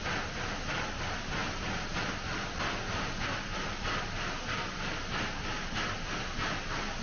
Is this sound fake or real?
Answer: real